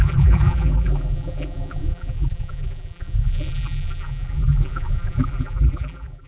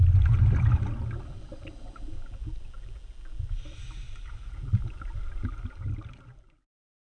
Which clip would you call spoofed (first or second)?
first